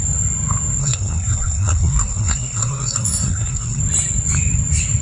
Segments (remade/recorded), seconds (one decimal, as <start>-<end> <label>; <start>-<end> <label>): 0.0-0.8 recorded; 0.8-3.8 remade; 3.8-5.0 recorded